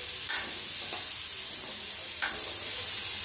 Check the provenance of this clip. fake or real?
real